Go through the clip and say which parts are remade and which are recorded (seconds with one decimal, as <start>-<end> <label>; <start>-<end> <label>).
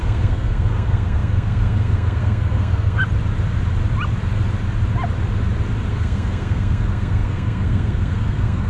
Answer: 0.0-3.0 remade; 3.0-5.9 recorded; 5.9-8.7 remade